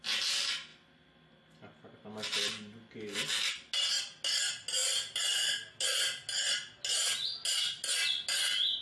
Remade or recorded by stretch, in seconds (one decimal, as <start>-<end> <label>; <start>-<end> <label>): 0.0-8.8 recorded